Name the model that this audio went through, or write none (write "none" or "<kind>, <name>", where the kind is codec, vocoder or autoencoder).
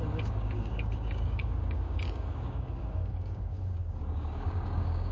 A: codec, DAC